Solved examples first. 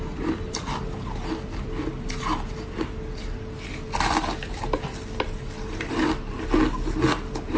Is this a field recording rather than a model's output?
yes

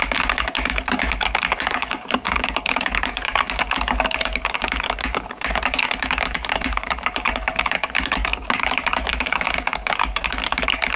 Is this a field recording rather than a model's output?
no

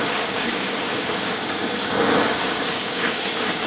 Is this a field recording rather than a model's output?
no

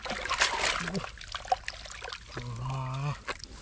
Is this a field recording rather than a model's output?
yes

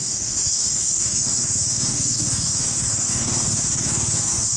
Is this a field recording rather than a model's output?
no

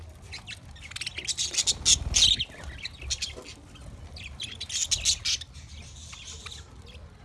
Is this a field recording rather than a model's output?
yes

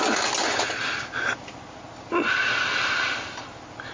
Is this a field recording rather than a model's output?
yes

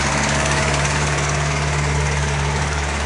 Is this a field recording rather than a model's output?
no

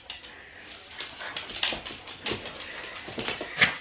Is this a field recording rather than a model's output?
yes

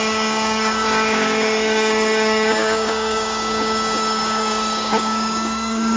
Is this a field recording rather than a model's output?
no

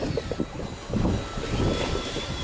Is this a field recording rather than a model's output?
yes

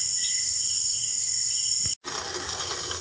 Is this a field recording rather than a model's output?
yes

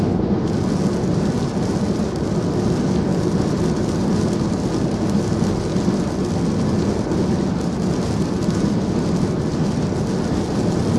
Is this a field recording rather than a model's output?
yes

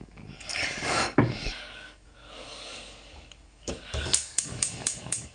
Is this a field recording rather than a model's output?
no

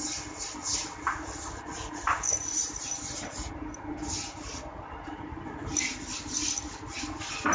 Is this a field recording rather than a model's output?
yes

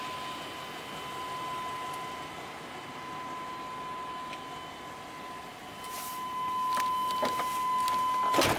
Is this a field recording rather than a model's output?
yes